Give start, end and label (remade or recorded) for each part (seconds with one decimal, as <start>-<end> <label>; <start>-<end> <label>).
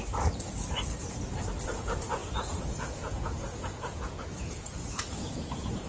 0.0-2.2 recorded; 2.2-5.9 remade